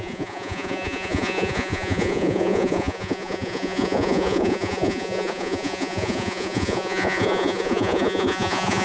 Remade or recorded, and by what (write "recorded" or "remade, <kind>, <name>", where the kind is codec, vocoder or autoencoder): remade, vocoder, Vocos